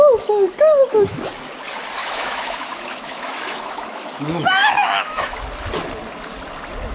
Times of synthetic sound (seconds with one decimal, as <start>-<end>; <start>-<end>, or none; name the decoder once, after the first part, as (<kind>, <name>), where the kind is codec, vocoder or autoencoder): 2.0-5.4 (autoencoder, DAC-VAE)